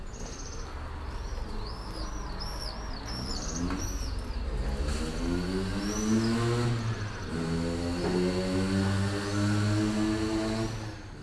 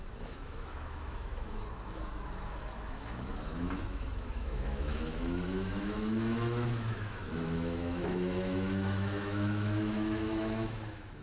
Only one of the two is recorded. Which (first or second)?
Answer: first